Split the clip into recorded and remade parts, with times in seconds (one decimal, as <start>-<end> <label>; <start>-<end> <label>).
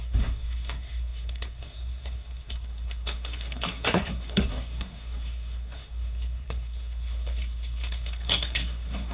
0.0-9.1 remade